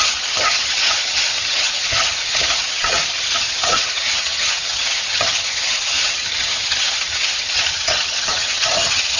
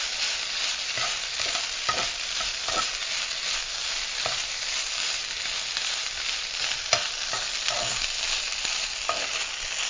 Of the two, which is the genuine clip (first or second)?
second